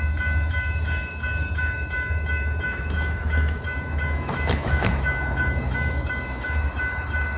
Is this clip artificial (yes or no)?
yes